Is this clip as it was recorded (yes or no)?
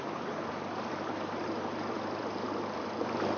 no